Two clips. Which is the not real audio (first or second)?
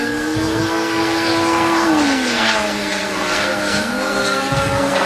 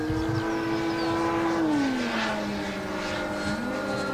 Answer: first